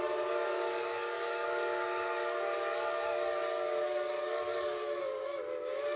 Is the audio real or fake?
fake